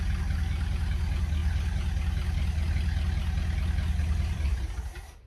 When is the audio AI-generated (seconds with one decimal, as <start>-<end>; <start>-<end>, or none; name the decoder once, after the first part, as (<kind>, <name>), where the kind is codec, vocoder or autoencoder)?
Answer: none